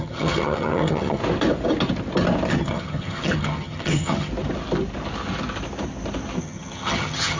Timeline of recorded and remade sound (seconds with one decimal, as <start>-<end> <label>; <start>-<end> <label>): 0.0-1.2 remade; 1.2-2.5 recorded; 2.5-4.3 remade; 4.3-6.4 recorded; 6.4-7.4 remade